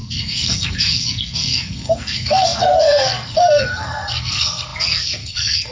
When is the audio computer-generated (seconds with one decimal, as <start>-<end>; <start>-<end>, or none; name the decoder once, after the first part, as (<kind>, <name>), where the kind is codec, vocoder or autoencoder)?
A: 0.0-5.7 (codec, SNAC)